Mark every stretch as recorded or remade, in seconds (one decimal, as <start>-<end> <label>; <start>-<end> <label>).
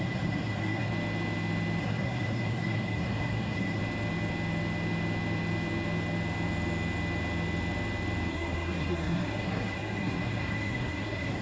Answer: 0.0-0.9 remade; 0.9-1.8 recorded; 1.8-3.8 remade; 3.8-8.3 recorded; 8.3-11.4 remade